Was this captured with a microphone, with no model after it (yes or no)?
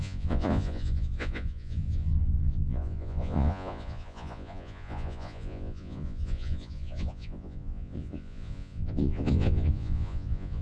no